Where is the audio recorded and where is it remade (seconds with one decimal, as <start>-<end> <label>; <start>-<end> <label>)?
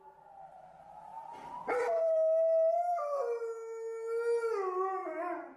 0.0-5.6 recorded